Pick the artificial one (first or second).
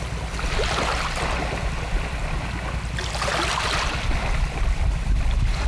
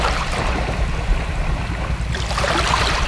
second